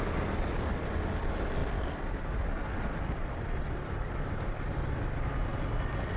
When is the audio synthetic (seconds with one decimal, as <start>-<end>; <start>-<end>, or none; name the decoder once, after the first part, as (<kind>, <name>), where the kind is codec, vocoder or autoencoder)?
1.6-4.8 (vocoder, BigVGAN v2)